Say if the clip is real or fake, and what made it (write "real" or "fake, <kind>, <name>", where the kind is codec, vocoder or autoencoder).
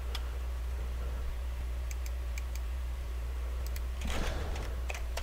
fake, vocoder, BigVGAN v2